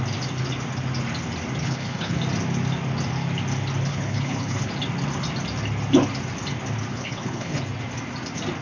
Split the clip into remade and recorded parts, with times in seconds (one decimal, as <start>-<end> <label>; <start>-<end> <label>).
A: 0.0-1.6 recorded; 1.6-2.2 remade; 2.2-3.9 recorded; 3.9-4.7 remade; 4.7-6.9 recorded; 6.9-7.6 remade; 7.6-8.6 recorded